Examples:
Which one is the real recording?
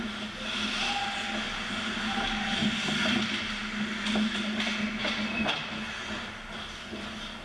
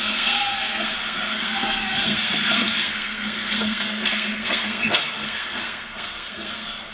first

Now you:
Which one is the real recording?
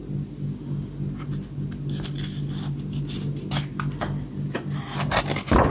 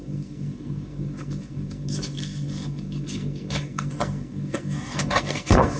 first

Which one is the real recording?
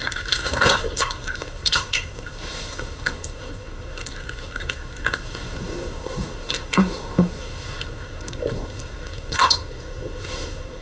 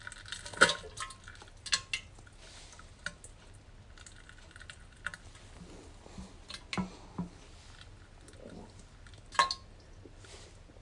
second